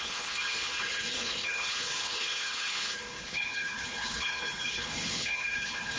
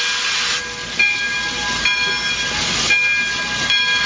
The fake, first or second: first